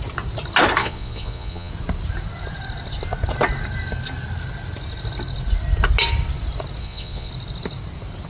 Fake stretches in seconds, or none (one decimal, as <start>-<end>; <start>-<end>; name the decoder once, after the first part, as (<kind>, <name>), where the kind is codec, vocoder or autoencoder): 0.8-1.7 (vocoder, Vocos); 6.8-7.3